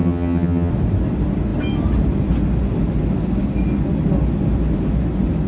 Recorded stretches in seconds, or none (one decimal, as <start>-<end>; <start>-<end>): 0.7-5.5